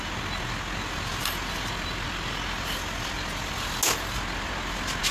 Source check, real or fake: real